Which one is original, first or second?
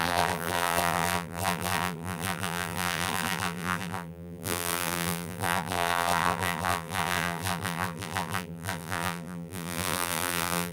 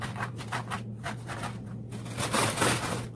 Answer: second